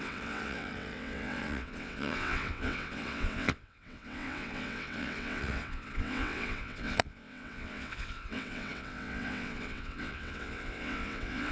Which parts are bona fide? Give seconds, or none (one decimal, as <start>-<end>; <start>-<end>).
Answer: none